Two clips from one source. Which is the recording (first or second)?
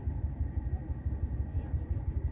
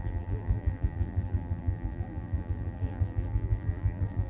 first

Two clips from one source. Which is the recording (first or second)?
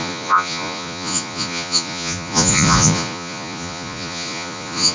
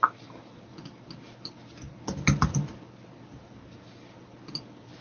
second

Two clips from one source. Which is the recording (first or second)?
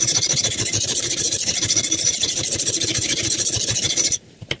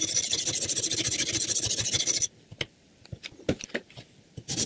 second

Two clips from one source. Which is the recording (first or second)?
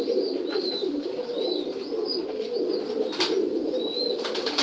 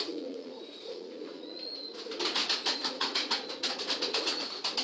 first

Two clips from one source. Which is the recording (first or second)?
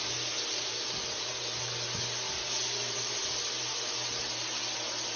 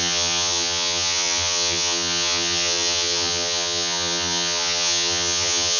first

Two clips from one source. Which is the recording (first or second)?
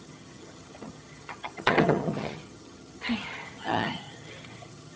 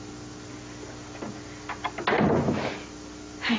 second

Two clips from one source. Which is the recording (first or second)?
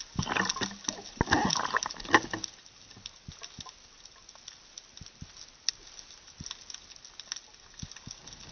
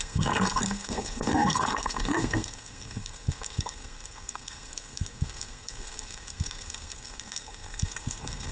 first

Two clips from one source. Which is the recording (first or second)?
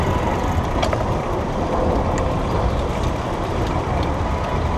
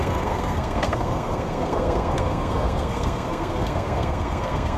first